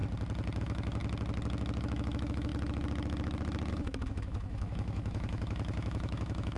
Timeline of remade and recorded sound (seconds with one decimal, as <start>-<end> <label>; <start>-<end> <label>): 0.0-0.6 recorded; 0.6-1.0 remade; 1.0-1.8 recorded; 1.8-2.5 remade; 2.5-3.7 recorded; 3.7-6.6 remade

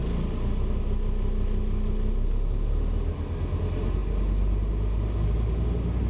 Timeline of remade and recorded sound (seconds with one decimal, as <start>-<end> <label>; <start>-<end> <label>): 0.0-6.1 recorded

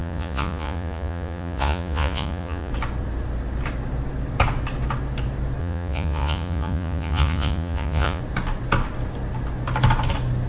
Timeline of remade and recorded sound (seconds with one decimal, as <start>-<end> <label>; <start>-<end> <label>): 0.0-2.7 remade; 2.7-5.6 recorded; 5.6-8.2 remade; 8.2-10.5 recorded

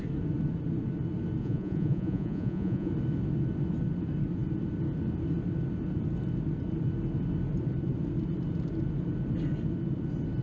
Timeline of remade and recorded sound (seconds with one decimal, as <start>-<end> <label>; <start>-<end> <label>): 0.0-1.4 recorded; 1.4-2.9 remade; 2.9-10.4 recorded

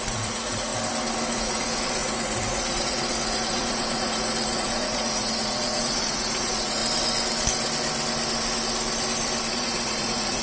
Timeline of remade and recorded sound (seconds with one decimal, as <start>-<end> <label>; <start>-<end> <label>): 0.0-0.7 remade; 0.7-1.3 recorded; 1.3-6.8 remade; 6.8-9.5 recorded; 9.5-10.4 remade